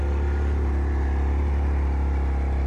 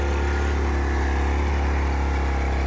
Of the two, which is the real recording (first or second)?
second